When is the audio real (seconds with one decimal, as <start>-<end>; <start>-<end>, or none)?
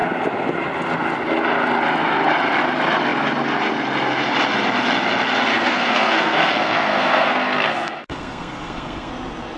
0.0-5.5; 9.1-9.6